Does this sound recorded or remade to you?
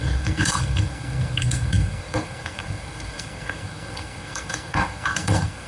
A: remade